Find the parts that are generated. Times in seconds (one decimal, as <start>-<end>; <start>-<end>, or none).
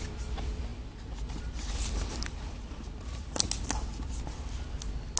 none